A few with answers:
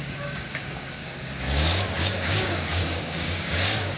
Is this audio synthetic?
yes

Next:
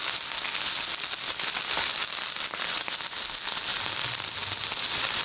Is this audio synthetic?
no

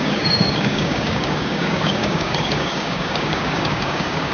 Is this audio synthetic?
yes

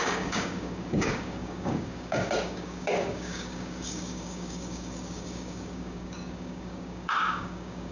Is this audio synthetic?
yes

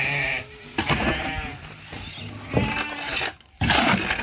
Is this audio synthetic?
no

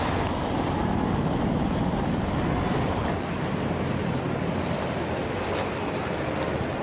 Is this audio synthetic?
no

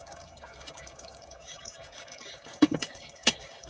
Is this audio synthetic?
yes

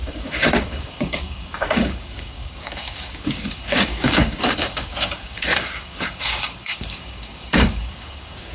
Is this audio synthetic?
yes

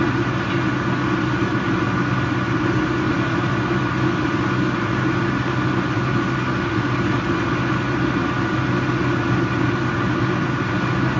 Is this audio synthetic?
no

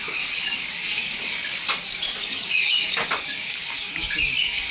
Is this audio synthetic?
yes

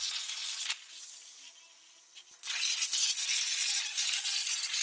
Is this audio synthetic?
no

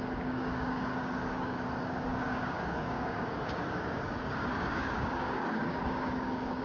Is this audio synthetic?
yes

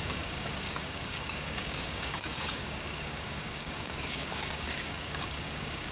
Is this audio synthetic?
yes